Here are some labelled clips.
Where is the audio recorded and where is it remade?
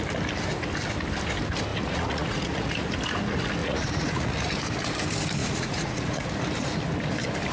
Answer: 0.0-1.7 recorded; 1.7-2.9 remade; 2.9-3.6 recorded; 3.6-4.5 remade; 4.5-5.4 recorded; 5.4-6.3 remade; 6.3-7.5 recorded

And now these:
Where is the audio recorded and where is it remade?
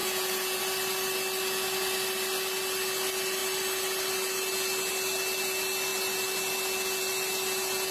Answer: 0.0-0.6 remade; 0.6-7.9 recorded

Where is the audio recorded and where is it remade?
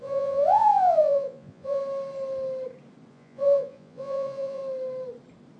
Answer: 0.0-1.8 remade; 1.8-3.1 recorded; 3.1-4.6 remade; 4.6-5.6 recorded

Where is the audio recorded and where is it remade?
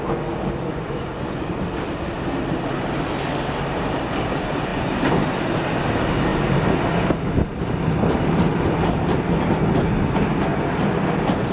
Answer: 0.0-0.7 recorded; 0.7-1.5 remade; 1.5-11.5 recorded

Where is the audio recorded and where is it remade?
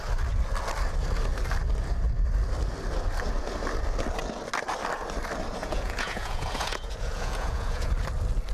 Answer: 0.0-5.6 recorded; 5.6-7.9 remade; 7.9-8.5 recorded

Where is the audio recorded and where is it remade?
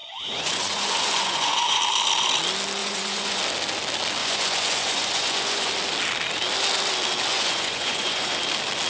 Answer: 0.0-1.8 remade; 1.8-2.8 recorded; 2.8-3.4 remade; 3.4-4.2 recorded; 4.2-5.7 remade; 5.7-7.3 recorded; 7.3-8.3 remade; 8.3-8.9 recorded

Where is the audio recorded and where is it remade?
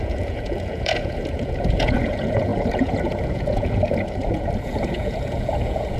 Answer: 0.0-6.0 remade